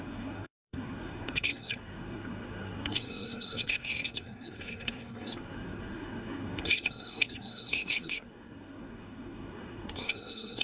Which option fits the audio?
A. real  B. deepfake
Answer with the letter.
B